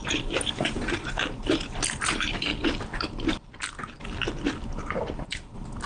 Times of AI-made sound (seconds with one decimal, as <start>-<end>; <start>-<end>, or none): 0.0-2.5